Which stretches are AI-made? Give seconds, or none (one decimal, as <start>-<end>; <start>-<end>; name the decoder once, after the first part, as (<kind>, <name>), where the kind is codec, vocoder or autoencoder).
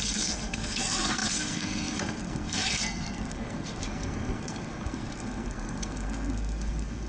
0.0-7.1 (codec, SNAC)